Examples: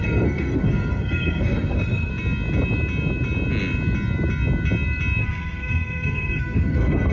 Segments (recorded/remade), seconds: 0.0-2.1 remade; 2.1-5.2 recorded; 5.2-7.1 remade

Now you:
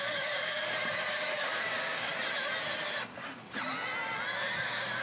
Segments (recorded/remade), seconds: 0.0-2.1 remade; 2.1-4.6 recorded; 4.6-5.0 remade

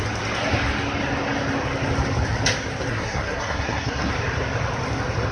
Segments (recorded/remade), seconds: 0.0-2.9 recorded; 2.9-4.1 remade; 4.1-5.3 recorded

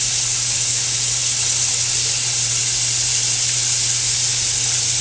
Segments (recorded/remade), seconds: 0.0-5.0 recorded

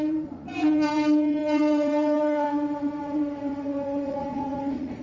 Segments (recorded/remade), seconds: 0.0-5.0 remade

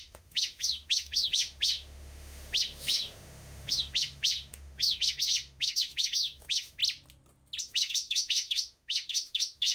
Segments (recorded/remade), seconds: 0.0-6.8 remade; 6.8-7.6 recorded; 7.6-9.7 remade

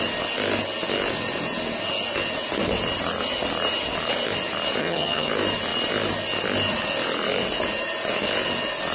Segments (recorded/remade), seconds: 0.0-4.8 recorded; 4.8-5.3 remade; 5.3-8.9 recorded

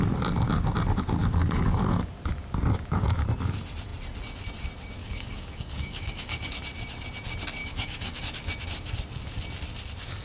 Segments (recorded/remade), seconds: 0.0-1.2 recorded; 1.2-1.8 remade; 1.8-5.0 recorded; 5.0-6.5 remade; 6.5-7.6 recorded; 7.6-8.2 remade; 8.2-10.2 recorded